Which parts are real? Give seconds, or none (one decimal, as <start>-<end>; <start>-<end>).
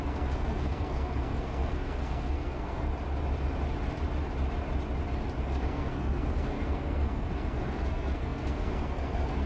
2.9-5.4